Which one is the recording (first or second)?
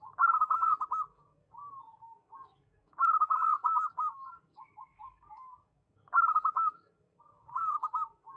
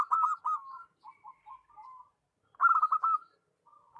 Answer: second